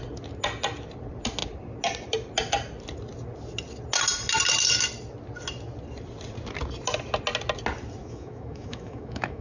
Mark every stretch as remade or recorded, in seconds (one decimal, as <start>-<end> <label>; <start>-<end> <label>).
0.0-8.0 recorded; 8.0-9.4 remade